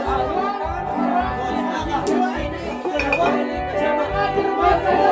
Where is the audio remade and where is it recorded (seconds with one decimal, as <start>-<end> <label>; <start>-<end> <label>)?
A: 0.0-5.1 recorded